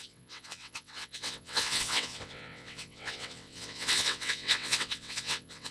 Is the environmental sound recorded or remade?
remade